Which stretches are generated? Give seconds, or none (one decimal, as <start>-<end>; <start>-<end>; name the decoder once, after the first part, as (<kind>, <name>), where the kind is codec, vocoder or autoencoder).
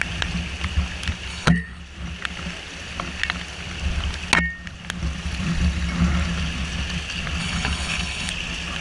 1.3-1.8 (codec, HILCodec); 7.4-8.3